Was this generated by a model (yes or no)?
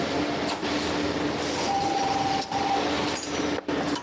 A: no